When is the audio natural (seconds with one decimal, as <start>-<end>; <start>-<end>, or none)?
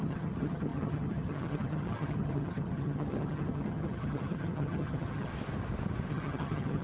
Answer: 5.3-6.1